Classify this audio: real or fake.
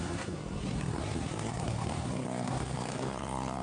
fake